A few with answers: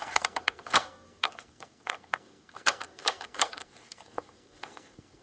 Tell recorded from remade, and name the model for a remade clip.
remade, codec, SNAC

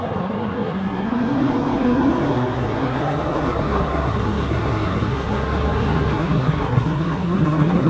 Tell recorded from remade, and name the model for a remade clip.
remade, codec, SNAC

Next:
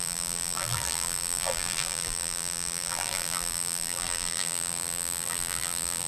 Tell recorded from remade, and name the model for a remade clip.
remade, vocoder, BigVGAN v2